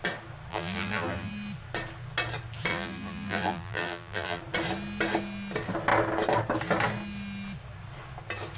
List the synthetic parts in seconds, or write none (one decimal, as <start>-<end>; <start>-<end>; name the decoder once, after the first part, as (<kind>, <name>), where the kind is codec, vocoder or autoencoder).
0.5-1.3 (vocoder, BigVGAN v2); 2.7-4.4